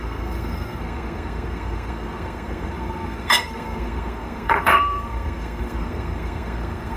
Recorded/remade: remade